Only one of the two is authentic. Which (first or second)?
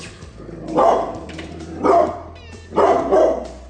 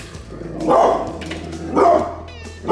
second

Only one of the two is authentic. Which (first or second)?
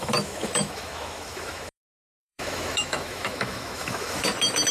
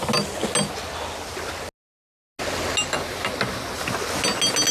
second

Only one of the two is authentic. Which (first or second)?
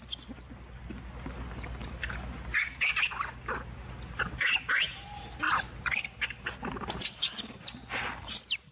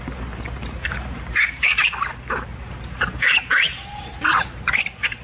first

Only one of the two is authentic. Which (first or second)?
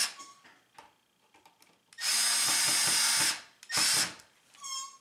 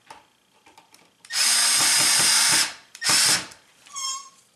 first